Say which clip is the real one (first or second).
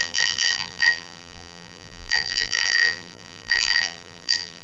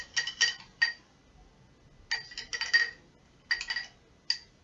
second